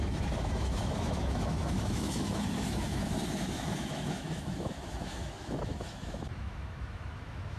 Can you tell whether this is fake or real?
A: fake